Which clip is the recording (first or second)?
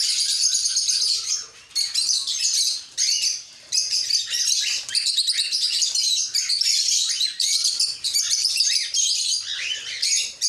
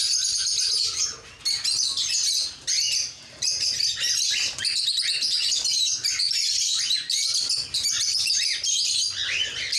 second